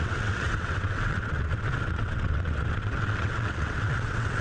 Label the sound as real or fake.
fake